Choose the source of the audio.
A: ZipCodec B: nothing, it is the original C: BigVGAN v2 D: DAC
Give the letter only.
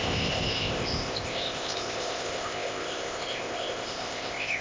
A